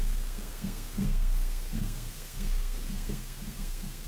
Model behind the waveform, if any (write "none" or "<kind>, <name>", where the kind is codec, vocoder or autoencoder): codec, SNAC